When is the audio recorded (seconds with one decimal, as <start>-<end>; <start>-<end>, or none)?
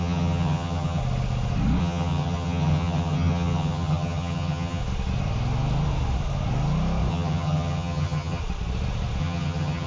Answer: 1.0-1.8; 4.8-7.1; 8.4-9.2